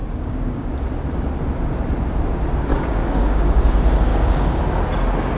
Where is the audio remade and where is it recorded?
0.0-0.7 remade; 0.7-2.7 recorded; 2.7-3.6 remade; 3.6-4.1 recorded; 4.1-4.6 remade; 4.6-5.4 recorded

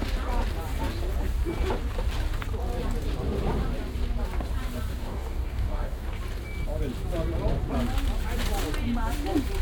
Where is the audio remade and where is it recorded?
0.0-4.9 recorded; 4.9-6.2 remade; 6.2-9.6 recorded

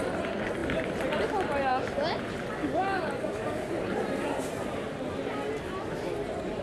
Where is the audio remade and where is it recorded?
0.0-2.6 recorded; 2.6-3.7 remade; 3.7-6.6 recorded

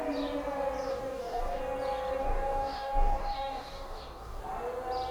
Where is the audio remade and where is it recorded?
0.0-0.9 recorded; 0.9-1.6 remade; 1.6-2.2 recorded; 2.2-4.4 remade; 4.4-5.1 recorded

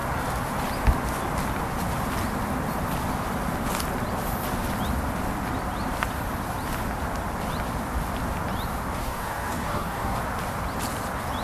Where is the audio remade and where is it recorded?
0.0-9.0 recorded; 9.0-10.2 remade; 10.2-11.4 recorded

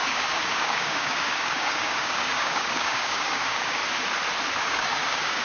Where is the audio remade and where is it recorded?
0.0-3.8 remade; 3.8-4.6 recorded; 4.6-5.4 remade